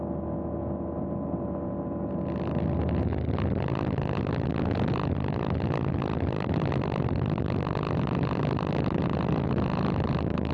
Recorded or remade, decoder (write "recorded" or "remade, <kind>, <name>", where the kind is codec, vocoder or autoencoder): recorded